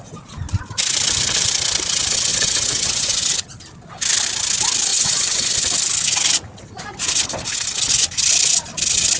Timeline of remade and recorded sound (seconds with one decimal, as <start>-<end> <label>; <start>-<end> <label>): 0.0-2.3 recorded; 2.3-3.3 remade; 3.3-4.9 recorded; 4.9-5.5 remade; 5.5-9.2 recorded